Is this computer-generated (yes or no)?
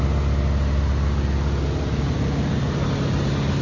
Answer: no